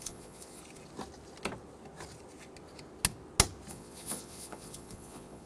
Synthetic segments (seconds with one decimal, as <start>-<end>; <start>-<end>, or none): 0.0-0.6; 3.7-5.5